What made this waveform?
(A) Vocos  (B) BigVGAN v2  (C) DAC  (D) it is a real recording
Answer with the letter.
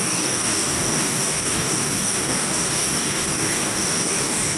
C